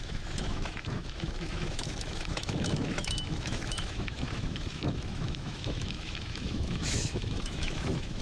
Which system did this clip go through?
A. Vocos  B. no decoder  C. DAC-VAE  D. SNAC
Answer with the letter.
C